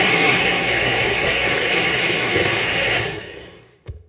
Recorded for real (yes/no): no